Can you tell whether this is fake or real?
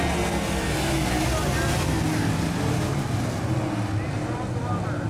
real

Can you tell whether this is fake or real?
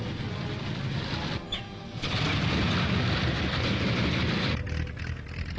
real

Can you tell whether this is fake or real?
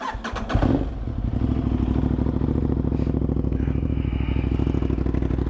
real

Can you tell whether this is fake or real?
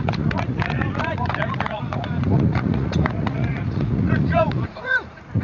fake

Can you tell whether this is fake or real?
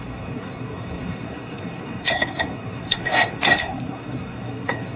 fake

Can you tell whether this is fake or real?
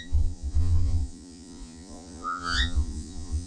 fake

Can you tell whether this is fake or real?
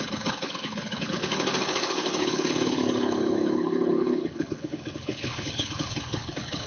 fake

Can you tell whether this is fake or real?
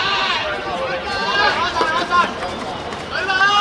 fake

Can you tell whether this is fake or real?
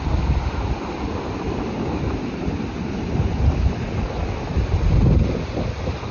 real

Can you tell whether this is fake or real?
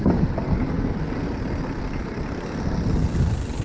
real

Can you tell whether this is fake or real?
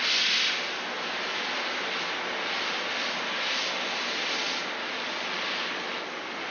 real